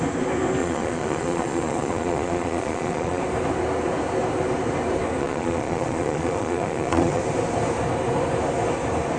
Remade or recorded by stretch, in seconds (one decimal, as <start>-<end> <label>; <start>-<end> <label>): 0.0-0.6 recorded; 0.6-3.2 remade; 3.2-5.2 recorded; 5.2-7.2 remade; 7.2-9.2 recorded